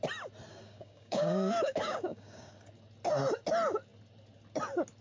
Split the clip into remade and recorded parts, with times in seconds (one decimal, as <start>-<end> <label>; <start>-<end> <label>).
0.0-0.5 recorded; 0.5-2.5 remade; 2.5-5.0 recorded